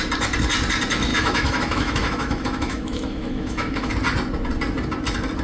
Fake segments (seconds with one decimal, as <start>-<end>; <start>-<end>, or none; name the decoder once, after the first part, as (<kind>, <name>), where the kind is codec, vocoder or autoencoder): 1.1-3.9 (autoencoder, DAC-VAE)